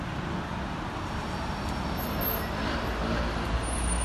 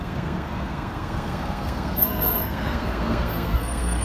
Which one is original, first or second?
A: first